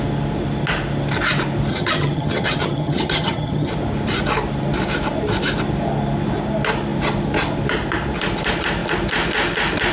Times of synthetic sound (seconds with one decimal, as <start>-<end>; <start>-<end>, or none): 1.7-3.7